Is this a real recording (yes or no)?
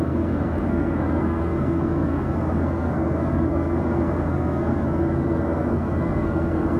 no